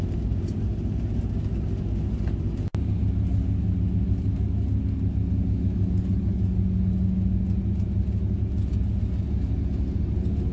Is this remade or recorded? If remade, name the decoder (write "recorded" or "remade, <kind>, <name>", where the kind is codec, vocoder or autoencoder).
recorded